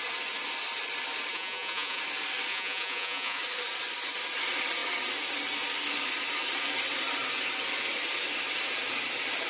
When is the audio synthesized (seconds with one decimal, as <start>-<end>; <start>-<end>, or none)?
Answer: 1.3-2.0; 2.5-3.4